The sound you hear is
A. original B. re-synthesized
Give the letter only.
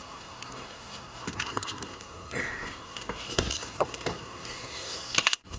B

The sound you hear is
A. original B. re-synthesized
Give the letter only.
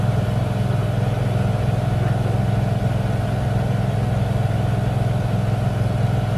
A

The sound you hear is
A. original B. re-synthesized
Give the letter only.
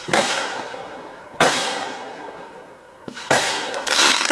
B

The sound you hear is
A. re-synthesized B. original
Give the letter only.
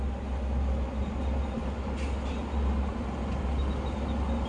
B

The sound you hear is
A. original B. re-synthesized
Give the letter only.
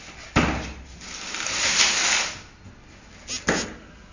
A